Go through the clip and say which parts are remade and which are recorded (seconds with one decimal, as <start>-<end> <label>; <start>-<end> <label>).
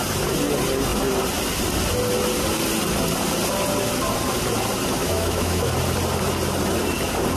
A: 0.0-5.0 recorded; 5.0-5.7 remade; 5.7-7.4 recorded